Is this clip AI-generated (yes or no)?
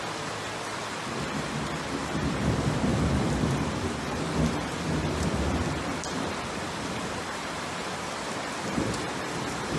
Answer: no